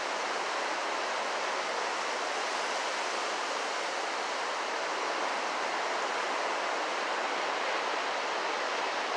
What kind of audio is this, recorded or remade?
recorded